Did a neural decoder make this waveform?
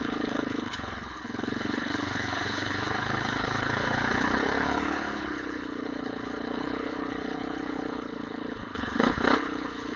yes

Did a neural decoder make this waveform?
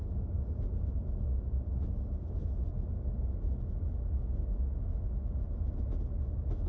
no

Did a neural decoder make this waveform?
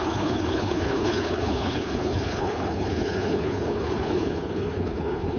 yes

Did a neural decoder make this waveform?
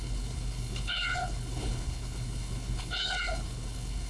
yes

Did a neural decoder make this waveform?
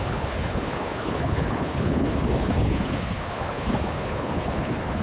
yes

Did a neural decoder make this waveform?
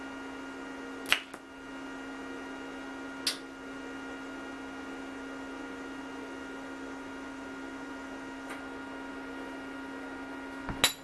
no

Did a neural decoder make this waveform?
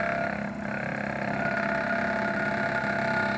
no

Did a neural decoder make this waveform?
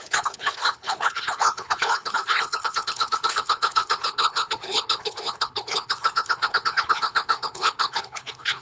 yes